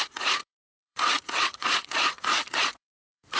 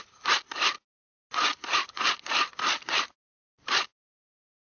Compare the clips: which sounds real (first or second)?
second